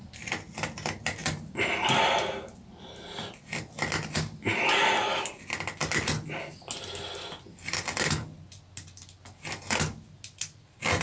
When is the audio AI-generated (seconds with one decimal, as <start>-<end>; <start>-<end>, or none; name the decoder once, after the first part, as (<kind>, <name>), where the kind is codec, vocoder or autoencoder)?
none